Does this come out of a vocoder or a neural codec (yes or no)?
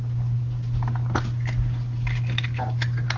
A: no